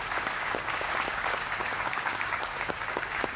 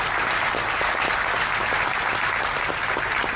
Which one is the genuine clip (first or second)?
second